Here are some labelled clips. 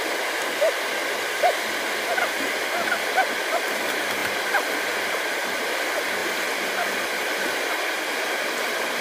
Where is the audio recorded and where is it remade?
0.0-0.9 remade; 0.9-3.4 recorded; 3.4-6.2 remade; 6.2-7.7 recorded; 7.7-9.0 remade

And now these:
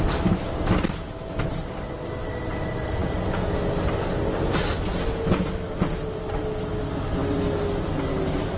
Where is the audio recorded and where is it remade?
0.0-8.6 recorded

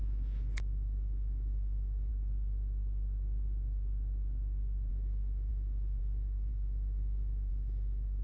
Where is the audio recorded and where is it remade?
0.0-2.1 remade; 2.1-4.9 recorded; 4.9-8.2 remade

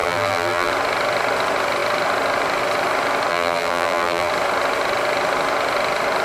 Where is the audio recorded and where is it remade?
0.0-0.7 remade; 0.7-3.3 recorded; 3.3-4.3 remade; 4.3-6.2 recorded

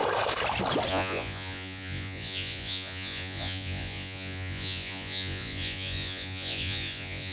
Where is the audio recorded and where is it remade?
0.0-0.9 recorded; 0.9-7.3 remade

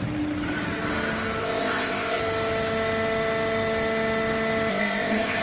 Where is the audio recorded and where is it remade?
0.0-1.4 recorded; 1.4-2.2 remade; 2.2-4.7 recorded; 4.7-5.4 remade

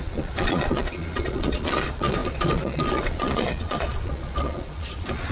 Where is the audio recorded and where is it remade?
0.0-5.3 remade

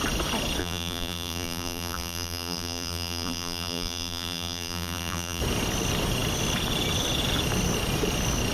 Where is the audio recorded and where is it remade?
0.0-0.6 recorded; 0.6-5.4 remade; 5.4-8.5 recorded